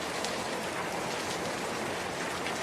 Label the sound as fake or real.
real